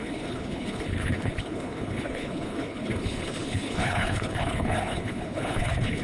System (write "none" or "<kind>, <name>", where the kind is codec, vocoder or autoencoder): codec, HILCodec